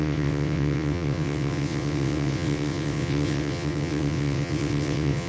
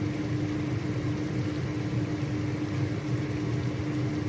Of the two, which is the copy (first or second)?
first